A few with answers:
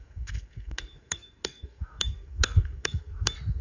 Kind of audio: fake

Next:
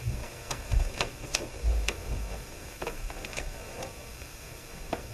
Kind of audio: fake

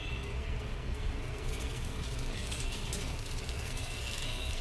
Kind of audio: fake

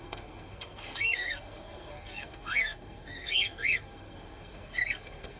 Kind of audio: fake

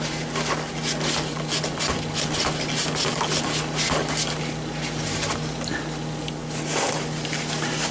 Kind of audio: real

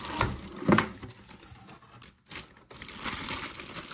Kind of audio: real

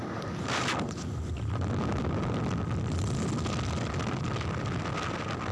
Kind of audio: real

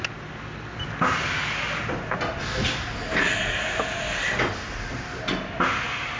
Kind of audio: real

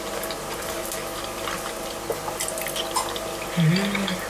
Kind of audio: real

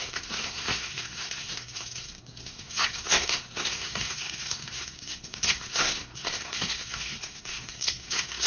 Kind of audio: fake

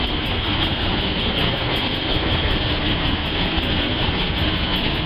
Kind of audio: fake